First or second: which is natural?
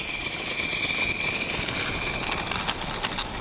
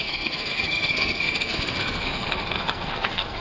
first